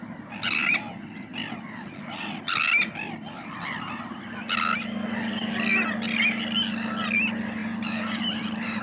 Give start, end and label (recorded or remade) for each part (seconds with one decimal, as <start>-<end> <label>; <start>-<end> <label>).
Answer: 0.0-7.6 recorded; 7.6-8.8 remade